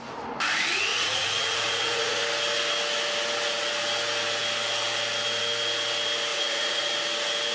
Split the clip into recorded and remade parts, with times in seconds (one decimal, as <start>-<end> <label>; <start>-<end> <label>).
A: 0.0-0.9 recorded; 0.9-2.2 remade; 2.2-6.3 recorded; 6.3-6.9 remade; 6.9-7.5 recorded